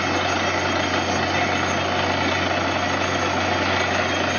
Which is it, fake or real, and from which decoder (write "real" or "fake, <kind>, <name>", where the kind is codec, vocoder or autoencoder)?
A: real